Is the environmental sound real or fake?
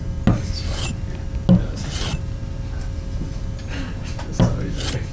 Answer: real